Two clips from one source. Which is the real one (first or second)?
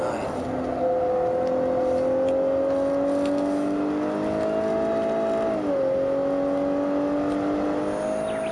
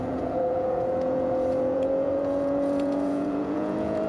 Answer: first